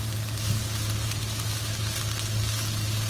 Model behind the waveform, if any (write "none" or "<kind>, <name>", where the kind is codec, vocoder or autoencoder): none